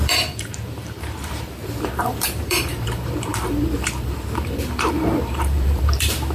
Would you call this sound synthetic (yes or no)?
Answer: yes